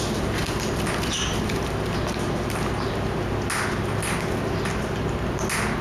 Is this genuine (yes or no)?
yes